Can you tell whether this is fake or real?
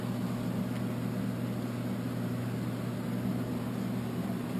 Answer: real